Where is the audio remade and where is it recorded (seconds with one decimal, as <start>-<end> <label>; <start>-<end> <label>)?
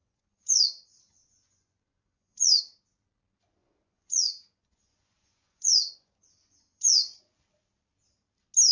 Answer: 0.0-2.6 remade; 2.6-3.6 recorded; 3.6-7.2 remade; 7.2-8.7 recorded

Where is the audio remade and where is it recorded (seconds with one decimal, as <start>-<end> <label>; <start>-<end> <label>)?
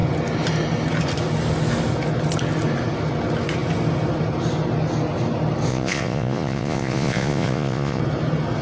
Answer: 0.0-5.7 recorded; 5.7-8.0 remade; 8.0-8.6 recorded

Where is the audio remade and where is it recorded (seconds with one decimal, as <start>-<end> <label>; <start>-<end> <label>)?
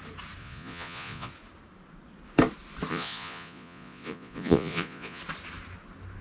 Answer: 0.0-0.4 recorded; 0.4-1.3 remade; 1.3-2.9 recorded; 2.9-5.2 remade; 5.2-6.2 recorded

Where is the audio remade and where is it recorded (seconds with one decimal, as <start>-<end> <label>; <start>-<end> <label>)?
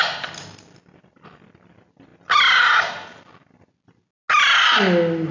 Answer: 0.0-5.3 recorded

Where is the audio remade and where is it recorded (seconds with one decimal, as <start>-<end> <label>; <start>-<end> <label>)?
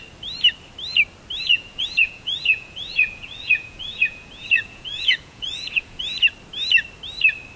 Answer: 0.0-1.4 recorded; 1.4-6.0 remade; 6.0-7.6 recorded